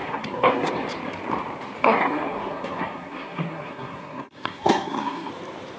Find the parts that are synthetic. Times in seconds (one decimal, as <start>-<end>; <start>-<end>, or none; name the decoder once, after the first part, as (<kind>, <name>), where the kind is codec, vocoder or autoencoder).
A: 0.0-0.7 (codec, SNAC); 1.8-5.3

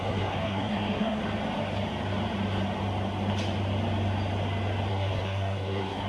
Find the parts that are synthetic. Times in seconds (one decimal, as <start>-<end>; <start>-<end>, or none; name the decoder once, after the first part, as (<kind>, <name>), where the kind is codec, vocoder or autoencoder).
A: 0.0-1.2 (codec, SNAC); 4.9-6.1

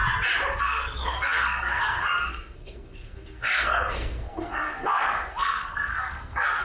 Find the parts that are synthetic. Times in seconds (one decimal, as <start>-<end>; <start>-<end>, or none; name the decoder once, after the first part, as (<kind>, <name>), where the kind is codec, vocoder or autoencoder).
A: 0.6-6.6 (codec, SNAC)

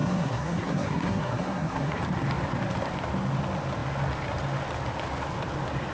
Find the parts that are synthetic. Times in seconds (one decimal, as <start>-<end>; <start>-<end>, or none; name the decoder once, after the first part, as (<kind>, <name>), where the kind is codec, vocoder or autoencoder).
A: 0.0-2.0 (codec, SNAC)

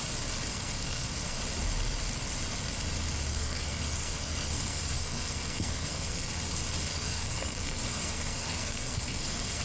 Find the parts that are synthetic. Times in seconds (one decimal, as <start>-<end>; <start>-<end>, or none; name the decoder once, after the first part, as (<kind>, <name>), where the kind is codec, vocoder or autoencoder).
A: 0.5-1.4 (codec, SNAC); 3.3-6.3; 6.9-9.6